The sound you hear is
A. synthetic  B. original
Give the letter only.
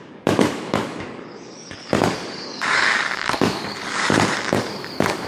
A